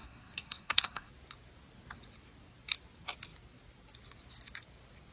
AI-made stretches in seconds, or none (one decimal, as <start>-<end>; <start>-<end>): 0.0-1.1